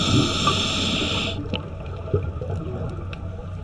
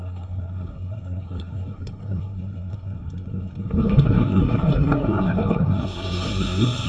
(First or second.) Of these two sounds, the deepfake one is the second